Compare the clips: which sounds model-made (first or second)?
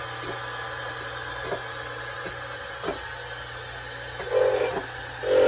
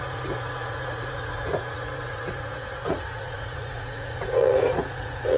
second